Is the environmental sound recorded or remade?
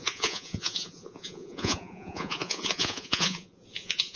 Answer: remade